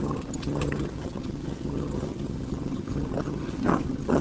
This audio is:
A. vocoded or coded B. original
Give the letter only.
A